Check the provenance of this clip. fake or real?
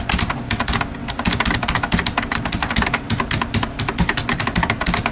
real